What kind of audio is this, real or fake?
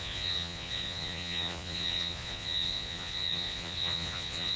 fake